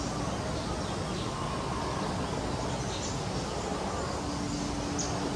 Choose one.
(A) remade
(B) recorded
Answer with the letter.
B